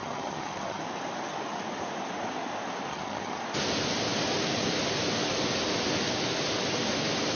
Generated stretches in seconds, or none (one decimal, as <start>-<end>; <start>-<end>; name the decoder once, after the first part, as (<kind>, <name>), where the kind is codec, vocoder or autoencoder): 0.0-0.8 (vocoder, HiFi-GAN); 2.9-3.4